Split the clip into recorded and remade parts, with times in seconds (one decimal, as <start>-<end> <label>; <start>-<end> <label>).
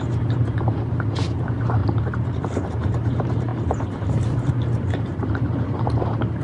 0.0-3.5 remade; 3.5-4.0 recorded; 4.0-6.4 remade